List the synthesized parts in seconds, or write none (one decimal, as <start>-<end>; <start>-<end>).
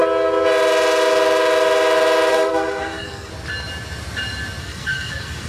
2.3-3.3; 4.6-5.5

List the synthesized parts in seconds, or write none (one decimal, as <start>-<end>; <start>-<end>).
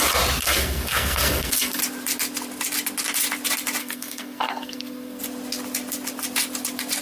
0.4-1.8; 3.8-5.2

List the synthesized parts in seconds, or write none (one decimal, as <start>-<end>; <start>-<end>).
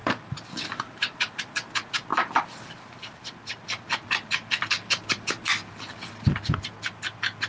0.0-1.4; 2.1-6.5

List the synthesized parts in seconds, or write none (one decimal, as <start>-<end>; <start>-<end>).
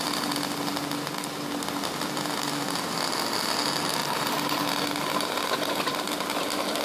4.0-4.7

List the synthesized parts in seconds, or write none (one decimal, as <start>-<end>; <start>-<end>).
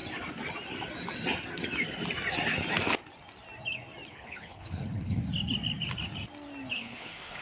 4.1-5.2; 6.7-7.4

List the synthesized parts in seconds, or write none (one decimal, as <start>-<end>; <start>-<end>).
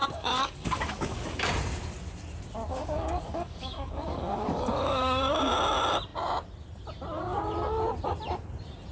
0.0-1.4; 2.7-5.2